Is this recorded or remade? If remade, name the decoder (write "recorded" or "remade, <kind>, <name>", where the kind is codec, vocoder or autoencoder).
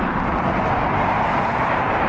recorded